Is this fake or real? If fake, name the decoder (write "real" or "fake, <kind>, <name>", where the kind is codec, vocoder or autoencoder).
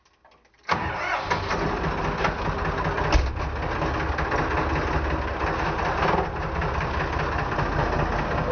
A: real